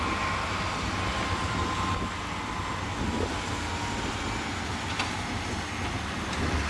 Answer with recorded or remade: recorded